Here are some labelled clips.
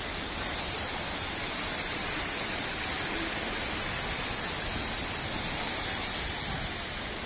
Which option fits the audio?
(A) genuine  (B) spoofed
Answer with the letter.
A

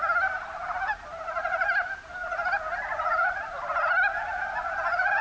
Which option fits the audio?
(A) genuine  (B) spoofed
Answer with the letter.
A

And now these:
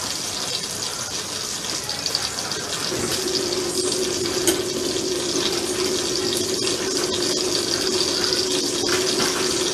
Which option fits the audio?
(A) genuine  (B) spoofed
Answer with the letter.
A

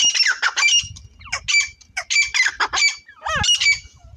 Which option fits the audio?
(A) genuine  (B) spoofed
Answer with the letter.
A